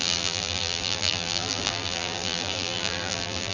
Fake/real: fake